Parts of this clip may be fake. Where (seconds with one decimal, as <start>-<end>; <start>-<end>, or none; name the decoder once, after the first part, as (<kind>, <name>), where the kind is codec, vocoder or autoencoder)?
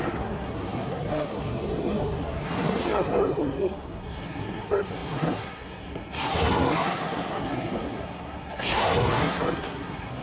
0.0-10.2 (codec, SNAC)